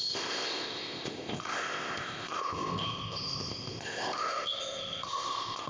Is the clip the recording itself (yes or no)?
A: no